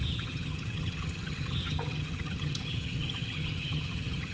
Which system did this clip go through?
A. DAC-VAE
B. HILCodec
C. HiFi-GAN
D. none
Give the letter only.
C